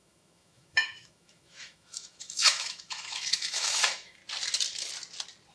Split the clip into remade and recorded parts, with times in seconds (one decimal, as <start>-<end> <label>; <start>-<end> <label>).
0.0-4.2 remade; 4.2-5.5 recorded